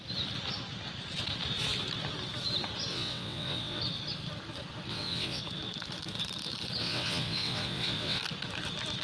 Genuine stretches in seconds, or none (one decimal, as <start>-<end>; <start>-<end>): 0.0-2.9; 3.8-4.9; 5.4-6.8; 8.2-9.0